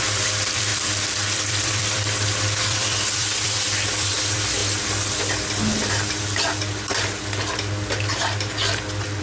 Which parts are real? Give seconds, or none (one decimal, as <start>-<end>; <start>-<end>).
4.6-9.2